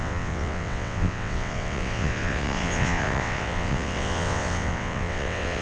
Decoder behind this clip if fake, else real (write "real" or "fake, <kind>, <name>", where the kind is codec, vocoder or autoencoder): fake, vocoder, WaveNeXt